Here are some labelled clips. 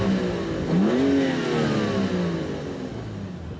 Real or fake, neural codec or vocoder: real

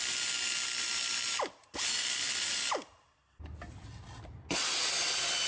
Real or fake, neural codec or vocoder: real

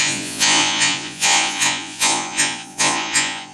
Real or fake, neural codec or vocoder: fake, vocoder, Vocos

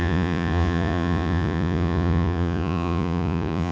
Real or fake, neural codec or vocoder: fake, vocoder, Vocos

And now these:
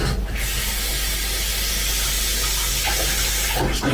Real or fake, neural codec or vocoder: real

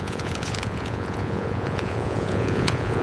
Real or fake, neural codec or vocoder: fake, vocoder, Vocos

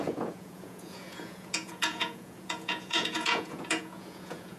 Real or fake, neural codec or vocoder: fake, vocoder, Vocos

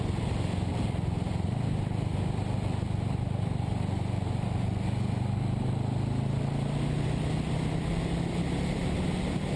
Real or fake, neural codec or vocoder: real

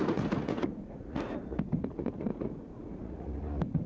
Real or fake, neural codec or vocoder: fake, vocoder, Vocos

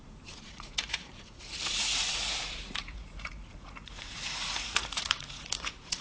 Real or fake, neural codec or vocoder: fake, vocoder, Vocos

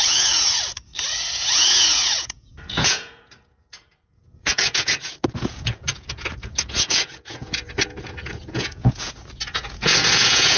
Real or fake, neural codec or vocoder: fake, vocoder, Vocos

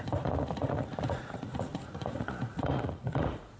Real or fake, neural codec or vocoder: fake, vocoder, Vocos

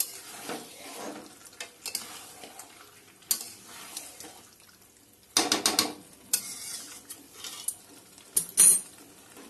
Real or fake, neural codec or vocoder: real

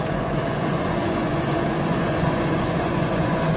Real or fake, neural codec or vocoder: fake, vocoder, Vocos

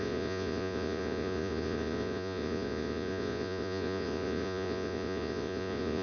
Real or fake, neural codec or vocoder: fake, vocoder, Vocos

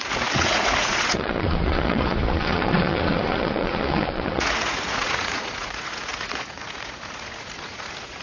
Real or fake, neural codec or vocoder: fake, vocoder, Vocos